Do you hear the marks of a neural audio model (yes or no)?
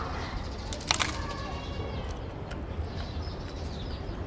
no